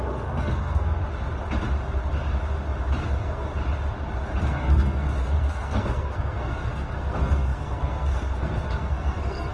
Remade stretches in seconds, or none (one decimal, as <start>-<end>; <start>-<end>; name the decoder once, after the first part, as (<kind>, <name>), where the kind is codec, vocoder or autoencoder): 0.0-1.0 (codec, SNAC); 3.0-3.5; 4.4-9.5